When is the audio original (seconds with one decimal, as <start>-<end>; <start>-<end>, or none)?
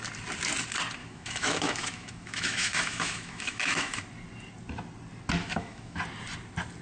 0.0-1.0; 4.0-5.4; 6.0-6.8